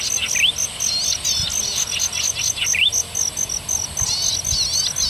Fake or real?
real